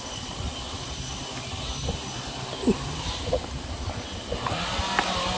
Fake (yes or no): no